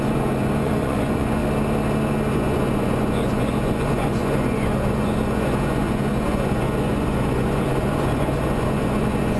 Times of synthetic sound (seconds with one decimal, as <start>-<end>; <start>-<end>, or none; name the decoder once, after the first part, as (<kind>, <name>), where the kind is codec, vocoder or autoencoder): 0.0-1.4 (vocoder, Vocos); 2.3-9.4